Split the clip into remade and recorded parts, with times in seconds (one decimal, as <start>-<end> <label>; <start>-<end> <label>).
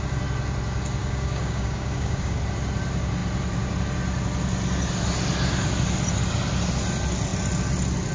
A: 0.0-1.0 recorded; 1.0-2.4 remade; 2.4-8.1 recorded